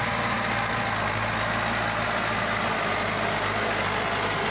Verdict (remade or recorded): recorded